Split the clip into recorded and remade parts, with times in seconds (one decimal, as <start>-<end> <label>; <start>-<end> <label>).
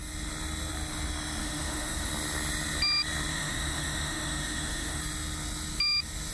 0.0-1.4 recorded; 1.4-2.1 remade; 2.1-3.3 recorded; 3.3-5.0 remade; 5.0-6.3 recorded